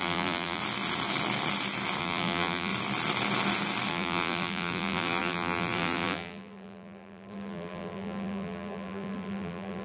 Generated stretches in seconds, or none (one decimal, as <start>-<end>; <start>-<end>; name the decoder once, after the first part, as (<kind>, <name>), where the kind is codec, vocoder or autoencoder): 0.0-0.6 (vocoder, BigVGAN v2); 2.0-2.7; 3.9-9.8